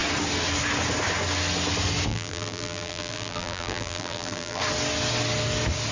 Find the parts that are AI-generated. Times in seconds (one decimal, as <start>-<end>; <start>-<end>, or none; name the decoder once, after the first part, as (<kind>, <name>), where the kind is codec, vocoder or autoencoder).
2.1-4.6 (vocoder, BigVGAN v2)